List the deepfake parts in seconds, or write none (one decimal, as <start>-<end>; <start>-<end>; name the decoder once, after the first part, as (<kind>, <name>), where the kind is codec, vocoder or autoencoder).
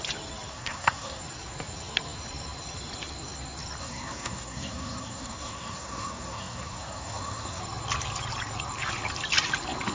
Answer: 0.5-1.2 (codec, SNAC); 3.8-7.6